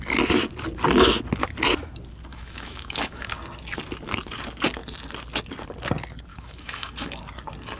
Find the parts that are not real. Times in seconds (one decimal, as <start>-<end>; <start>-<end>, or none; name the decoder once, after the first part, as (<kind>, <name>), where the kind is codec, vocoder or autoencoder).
2.3-3.3 (autoencoder, DAC-VAE); 6.3-6.9